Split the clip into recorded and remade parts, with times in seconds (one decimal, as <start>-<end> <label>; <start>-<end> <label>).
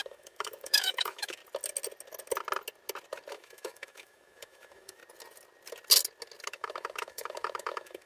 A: 0.0-1.4 remade; 1.4-3.3 recorded; 3.3-5.0 remade; 5.0-6.5 recorded; 6.5-8.1 remade